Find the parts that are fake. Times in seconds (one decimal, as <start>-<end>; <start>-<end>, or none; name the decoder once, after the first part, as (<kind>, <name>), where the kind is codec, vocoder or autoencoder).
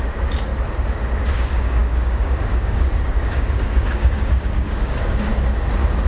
0.0-0.5 (codec, DAC); 1.2-5.3